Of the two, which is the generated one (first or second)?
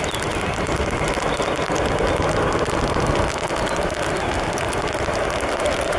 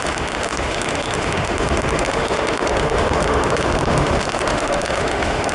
second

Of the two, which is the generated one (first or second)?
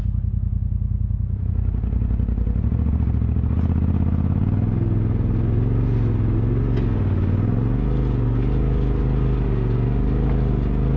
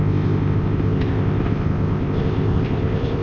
second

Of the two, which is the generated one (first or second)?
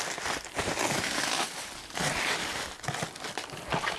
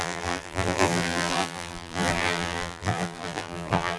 second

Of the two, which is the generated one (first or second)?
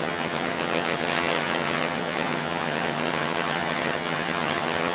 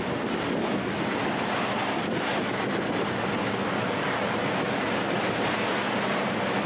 first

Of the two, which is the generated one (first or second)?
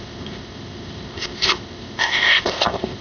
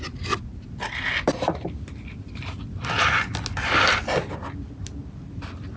first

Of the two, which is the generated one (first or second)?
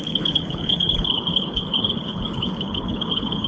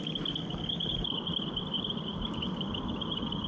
first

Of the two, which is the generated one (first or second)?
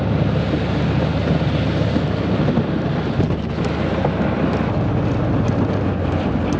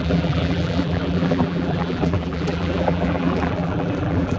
second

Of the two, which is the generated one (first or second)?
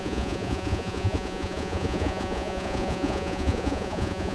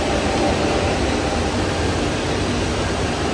first